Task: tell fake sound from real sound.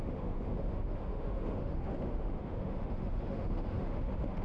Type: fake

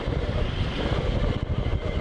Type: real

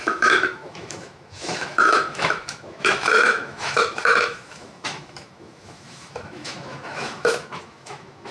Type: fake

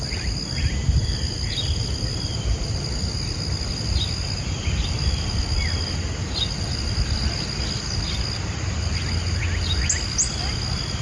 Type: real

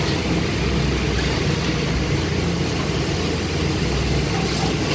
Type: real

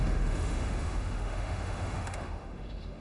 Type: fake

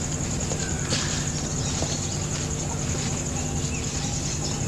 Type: real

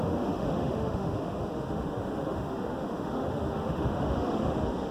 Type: fake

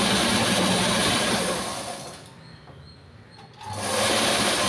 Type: real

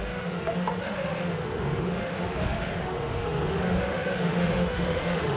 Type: fake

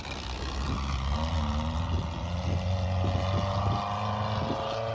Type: real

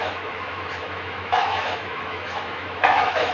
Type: fake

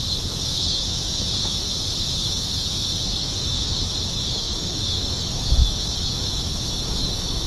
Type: fake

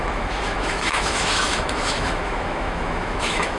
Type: fake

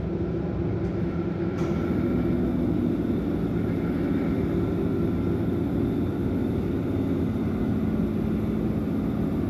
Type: real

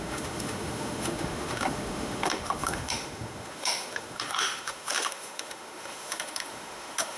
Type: fake